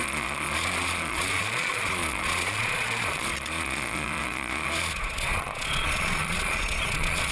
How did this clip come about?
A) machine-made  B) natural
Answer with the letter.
A